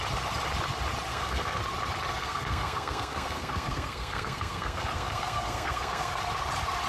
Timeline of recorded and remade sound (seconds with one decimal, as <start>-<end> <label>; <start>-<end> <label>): 0.0-1.1 recorded; 1.1-1.6 remade; 1.6-2.1 recorded; 2.1-6.2 remade; 6.2-6.9 recorded